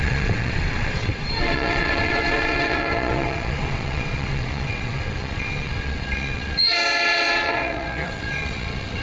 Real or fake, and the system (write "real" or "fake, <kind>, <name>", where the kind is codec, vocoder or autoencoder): fake, vocoder, WaveNeXt